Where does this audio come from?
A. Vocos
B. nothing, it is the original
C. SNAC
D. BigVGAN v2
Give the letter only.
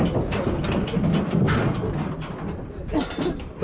B